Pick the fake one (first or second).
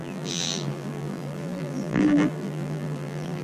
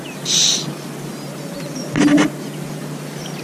first